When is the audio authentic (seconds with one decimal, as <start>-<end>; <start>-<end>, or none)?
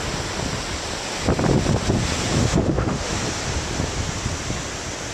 0.0-2.4; 3.1-5.1